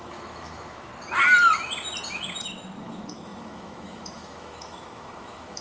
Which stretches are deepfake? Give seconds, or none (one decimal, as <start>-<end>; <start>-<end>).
0.0-0.9; 2.8-5.6